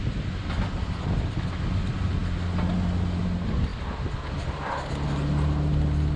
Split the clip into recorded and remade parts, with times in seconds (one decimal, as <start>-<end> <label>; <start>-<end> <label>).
0.0-6.2 recorded